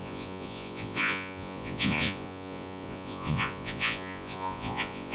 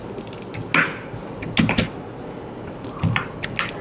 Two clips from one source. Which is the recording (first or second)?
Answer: second